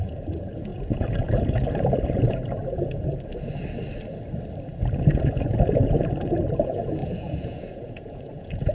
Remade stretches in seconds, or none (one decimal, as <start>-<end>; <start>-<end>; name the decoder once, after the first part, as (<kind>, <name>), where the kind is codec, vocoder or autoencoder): 0.0-3.3 (vocoder, Vocos); 5.0-8.7